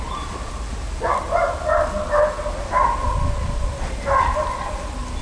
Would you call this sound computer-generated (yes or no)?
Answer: no